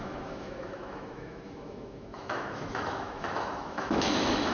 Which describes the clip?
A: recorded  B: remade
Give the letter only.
B